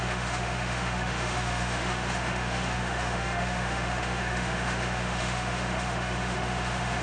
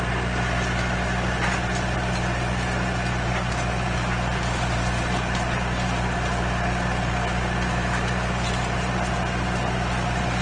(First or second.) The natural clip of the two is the second